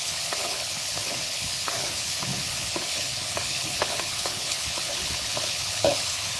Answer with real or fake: fake